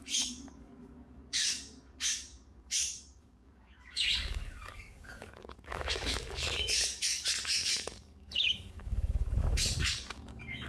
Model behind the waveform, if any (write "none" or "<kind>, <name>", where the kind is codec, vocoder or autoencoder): codec, DAC